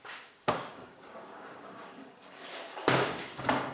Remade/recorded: remade